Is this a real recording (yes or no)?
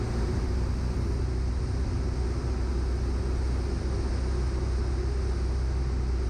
yes